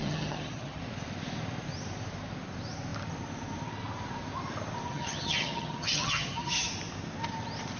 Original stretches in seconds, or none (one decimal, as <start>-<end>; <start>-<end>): 0.8-4.9; 6.7-7.8